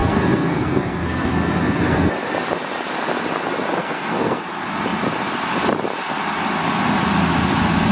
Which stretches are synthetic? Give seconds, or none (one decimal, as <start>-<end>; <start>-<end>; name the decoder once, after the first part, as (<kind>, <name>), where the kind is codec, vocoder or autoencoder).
0.0-2.1 (codec, SNAC); 3.8-4.4